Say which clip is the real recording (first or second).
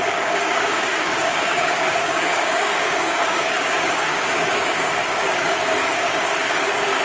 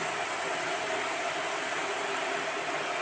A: second